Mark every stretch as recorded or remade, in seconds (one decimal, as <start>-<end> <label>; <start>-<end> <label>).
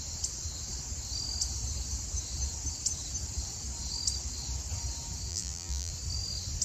0.0-5.3 recorded; 5.3-5.9 remade; 5.9-6.6 recorded